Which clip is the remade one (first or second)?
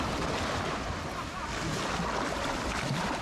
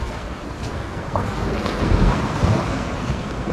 second